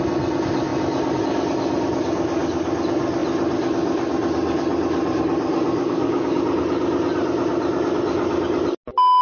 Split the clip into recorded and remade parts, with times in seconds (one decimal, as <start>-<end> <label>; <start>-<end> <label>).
0.0-5.8 recorded; 5.8-6.4 remade; 6.4-9.2 recorded